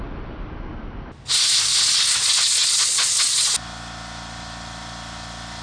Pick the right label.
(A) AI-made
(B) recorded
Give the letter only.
B